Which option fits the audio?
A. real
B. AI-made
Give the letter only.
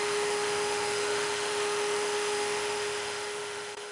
B